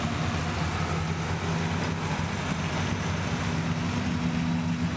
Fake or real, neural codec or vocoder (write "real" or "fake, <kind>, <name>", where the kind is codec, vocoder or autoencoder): real